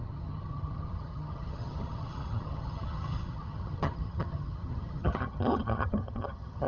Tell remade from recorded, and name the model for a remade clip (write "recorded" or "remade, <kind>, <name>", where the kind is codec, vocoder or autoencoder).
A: remade, vocoder, HiFi-GAN